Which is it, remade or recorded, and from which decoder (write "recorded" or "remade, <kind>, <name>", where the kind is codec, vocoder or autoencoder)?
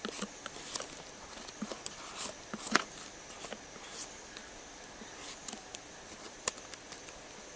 recorded